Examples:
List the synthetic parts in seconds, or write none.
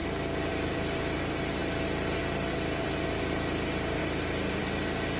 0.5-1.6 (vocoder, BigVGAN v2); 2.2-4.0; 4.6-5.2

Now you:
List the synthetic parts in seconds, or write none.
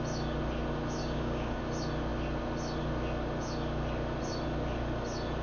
1.0-1.6 (codec, DAC)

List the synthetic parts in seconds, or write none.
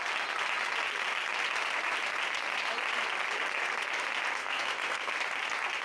4.4-5.1 (codec, SNAC)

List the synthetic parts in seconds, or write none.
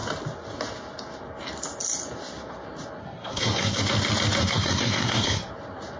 3.0-3.8 (codec, SNAC); 4.4-5.5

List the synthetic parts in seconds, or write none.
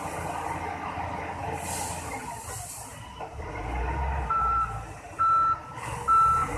2.9-5.2 (vocoder, BigVGAN v2)